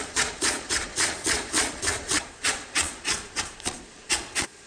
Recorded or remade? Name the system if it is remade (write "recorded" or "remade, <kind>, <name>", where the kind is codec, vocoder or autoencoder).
remade, vocoder, Vocos